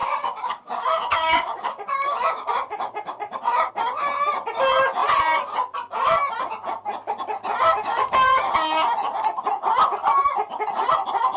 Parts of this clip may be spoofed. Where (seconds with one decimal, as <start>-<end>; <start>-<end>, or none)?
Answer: 0.0-3.7; 7.7-8.5